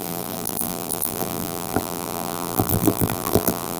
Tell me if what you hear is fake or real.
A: fake